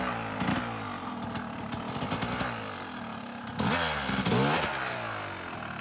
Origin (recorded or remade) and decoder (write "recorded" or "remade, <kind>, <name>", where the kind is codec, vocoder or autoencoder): recorded